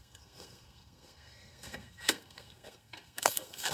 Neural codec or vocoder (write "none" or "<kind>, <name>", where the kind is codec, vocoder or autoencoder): codec, SNAC